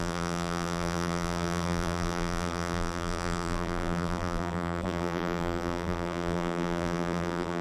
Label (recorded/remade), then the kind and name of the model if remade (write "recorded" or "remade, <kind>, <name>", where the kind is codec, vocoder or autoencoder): remade, vocoder, BigVGAN v2